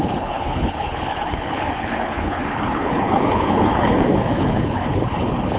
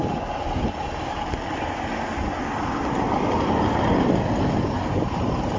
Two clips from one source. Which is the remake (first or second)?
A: first